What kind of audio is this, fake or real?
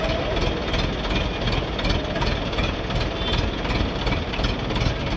real